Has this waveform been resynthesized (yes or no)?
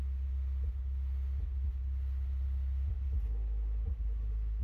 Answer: no